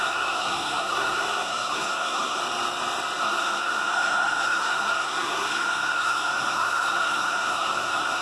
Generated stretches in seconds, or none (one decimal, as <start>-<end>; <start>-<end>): 0.0-2.4; 3.2-8.2